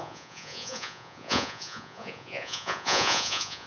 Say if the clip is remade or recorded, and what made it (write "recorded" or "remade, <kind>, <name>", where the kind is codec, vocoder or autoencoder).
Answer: remade, vocoder, Vocos